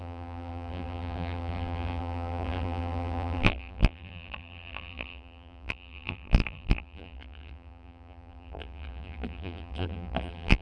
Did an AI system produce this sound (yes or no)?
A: yes